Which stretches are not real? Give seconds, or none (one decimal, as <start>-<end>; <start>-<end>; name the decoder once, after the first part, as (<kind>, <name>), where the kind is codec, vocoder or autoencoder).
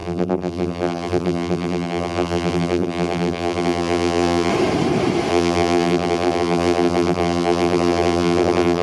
0.0-4.5 (vocoder, BigVGAN v2); 5.3-8.8